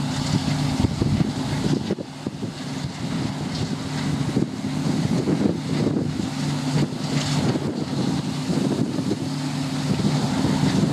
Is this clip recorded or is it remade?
recorded